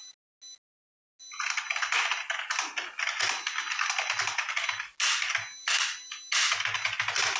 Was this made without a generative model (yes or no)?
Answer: yes